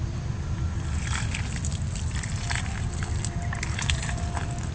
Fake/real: real